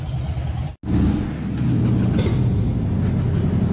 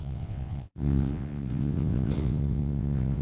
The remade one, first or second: second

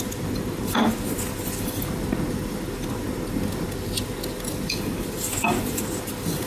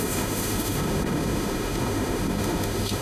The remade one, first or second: second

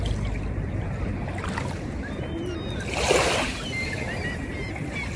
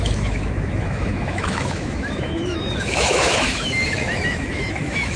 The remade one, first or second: second